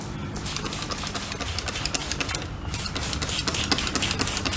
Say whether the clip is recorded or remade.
recorded